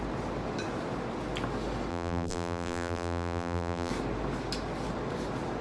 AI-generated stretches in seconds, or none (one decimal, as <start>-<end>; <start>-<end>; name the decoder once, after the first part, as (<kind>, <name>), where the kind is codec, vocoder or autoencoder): 1.9-3.9 (vocoder, BigVGAN v2)